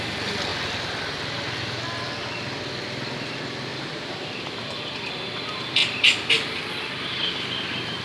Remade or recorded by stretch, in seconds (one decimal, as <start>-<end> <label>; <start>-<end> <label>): 0.0-3.7 recorded; 3.7-4.3 remade; 4.3-8.0 recorded